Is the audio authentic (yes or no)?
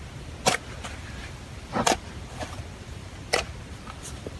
no